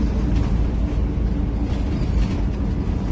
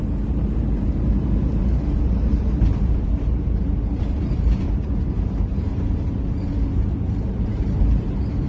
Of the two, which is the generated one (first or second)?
second